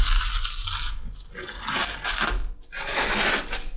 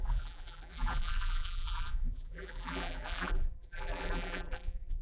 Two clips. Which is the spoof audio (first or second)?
second